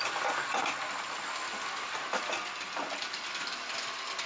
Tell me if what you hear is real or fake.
real